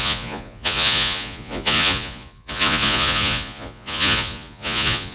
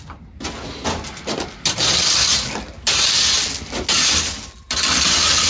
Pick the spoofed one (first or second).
first